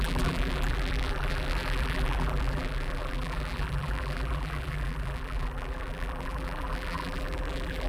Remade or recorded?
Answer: remade